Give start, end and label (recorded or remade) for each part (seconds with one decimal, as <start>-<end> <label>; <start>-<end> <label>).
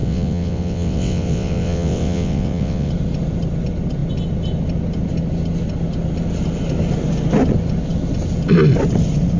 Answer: 0.0-2.9 remade; 2.9-9.4 recorded